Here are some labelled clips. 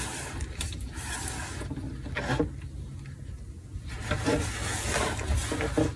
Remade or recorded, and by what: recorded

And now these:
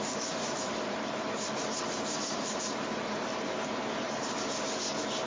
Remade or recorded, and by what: remade, vocoder, BigVGAN v2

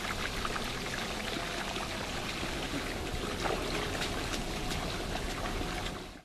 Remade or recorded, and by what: recorded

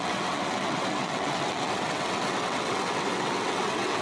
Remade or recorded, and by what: remade, vocoder, WaveNeXt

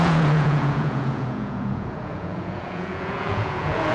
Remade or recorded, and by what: remade, vocoder, Vocos